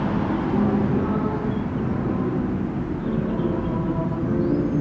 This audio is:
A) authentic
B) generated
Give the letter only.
A